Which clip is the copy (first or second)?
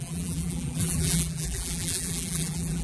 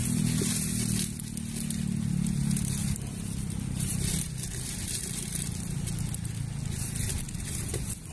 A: first